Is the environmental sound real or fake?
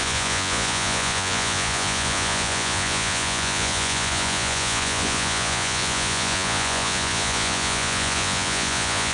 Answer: fake